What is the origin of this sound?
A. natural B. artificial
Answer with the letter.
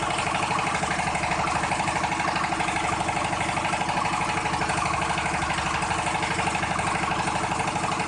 A